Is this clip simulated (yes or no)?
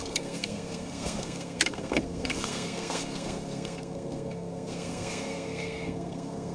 yes